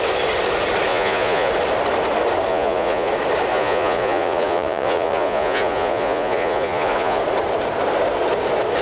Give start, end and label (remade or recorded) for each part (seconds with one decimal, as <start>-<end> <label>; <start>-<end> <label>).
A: 0.0-0.9 recorded; 0.9-1.5 remade; 1.5-2.5 recorded; 2.5-3.1 remade; 3.1-3.5 recorded; 3.5-7.2 remade; 7.2-8.8 recorded